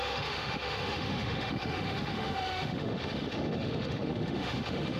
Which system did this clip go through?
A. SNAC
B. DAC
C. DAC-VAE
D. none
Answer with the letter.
C